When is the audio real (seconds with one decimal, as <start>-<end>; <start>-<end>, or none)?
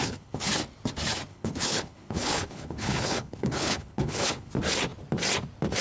0.5-1.3; 4.5-5.8